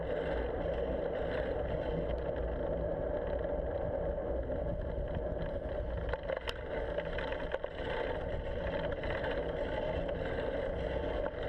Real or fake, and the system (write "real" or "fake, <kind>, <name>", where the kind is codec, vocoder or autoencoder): real